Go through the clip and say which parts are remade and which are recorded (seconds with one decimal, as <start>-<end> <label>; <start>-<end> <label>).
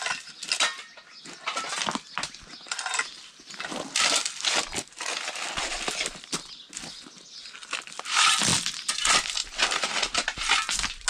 0.0-4.2 recorded; 4.2-5.1 remade; 5.1-8.5 recorded; 8.5-9.1 remade; 9.1-11.1 recorded